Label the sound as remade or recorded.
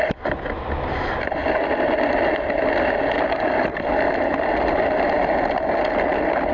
recorded